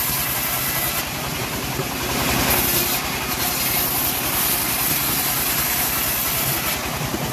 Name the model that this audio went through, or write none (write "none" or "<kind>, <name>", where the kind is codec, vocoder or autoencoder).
none